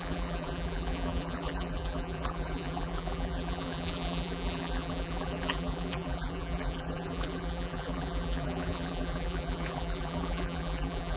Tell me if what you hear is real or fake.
fake